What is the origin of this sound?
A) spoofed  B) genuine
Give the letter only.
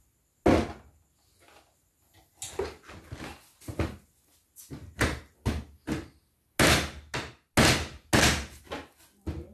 B